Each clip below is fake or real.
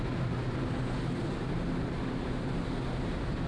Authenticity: real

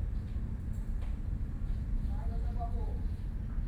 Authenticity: real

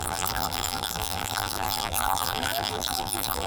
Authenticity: fake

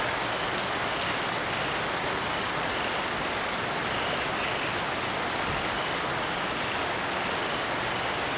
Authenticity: real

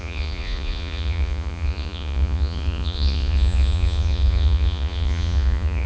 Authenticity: fake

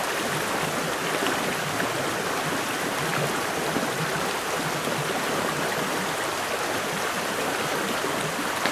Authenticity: real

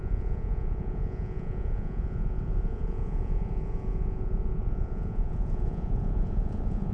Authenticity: fake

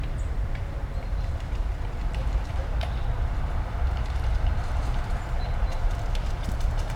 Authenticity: fake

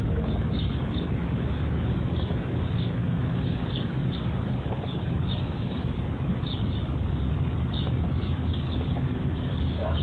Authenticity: fake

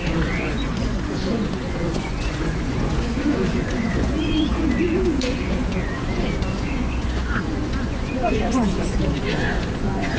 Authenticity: fake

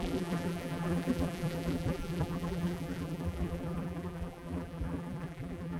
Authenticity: fake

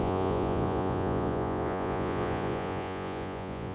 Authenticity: fake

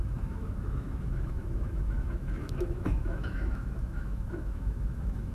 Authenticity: fake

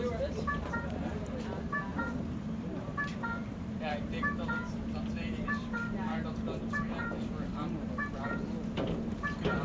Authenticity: fake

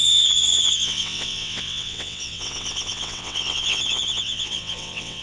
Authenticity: fake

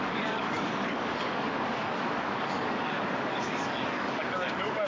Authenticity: fake